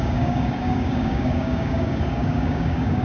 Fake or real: fake